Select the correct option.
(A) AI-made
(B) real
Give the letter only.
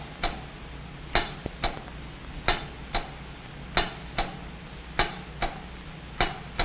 B